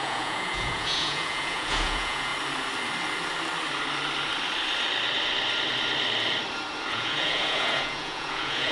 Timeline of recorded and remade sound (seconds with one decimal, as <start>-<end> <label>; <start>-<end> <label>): 0.0-2.3 remade; 2.3-6.9 recorded; 6.9-8.7 remade